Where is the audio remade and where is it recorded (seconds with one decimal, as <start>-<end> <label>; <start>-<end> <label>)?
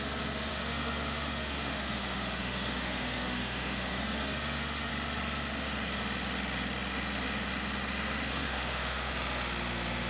0.0-0.5 recorded; 0.5-4.9 remade; 4.9-8.3 recorded; 8.3-9.1 remade; 9.1-10.1 recorded